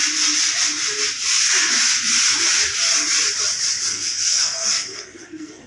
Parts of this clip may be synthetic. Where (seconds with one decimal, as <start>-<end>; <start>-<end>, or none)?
3.9-5.7